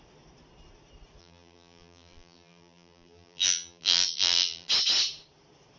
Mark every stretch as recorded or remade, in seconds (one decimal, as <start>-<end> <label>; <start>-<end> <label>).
0.0-1.2 recorded; 1.2-4.7 remade; 4.7-5.8 recorded